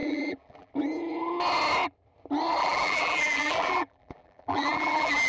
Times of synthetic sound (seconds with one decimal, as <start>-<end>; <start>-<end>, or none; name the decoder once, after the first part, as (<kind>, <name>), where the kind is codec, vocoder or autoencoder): 0.0-0.7 (vocoder, BigVGAN v2); 2.6-5.3